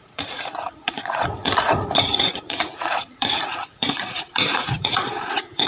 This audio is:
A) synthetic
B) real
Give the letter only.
A